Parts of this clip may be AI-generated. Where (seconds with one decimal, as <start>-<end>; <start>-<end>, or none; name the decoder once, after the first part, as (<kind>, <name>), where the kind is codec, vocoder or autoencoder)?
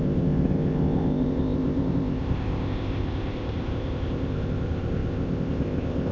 0.0-6.1 (codec, ZipCodec)